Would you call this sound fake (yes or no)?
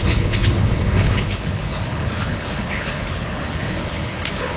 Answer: yes